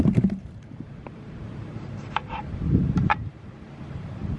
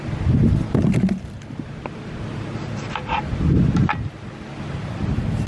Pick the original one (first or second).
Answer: second